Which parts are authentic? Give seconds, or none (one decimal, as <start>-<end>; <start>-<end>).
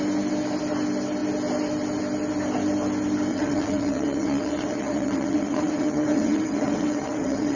0.0-3.3